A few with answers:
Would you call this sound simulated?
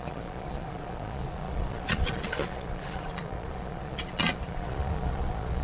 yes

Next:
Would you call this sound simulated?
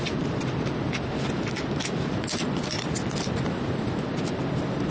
no